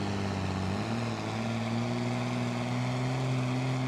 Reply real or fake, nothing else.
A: real